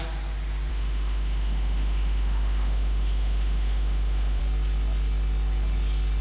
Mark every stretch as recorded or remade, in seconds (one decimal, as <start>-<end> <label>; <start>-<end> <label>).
0.0-0.7 recorded; 0.7-4.4 remade; 4.4-6.2 recorded